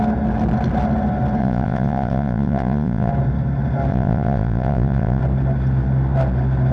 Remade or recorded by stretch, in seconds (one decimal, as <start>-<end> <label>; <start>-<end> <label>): 0.0-1.4 recorded; 1.4-3.1 remade; 3.1-3.9 recorded; 3.9-5.2 remade; 5.2-6.7 recorded